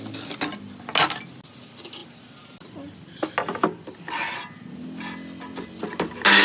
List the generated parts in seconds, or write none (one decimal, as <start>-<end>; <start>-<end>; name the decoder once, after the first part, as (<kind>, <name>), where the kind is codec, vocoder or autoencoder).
none